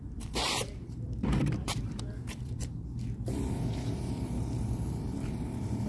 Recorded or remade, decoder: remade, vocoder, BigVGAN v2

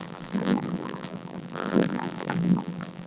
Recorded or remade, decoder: remade, vocoder, BigVGAN v2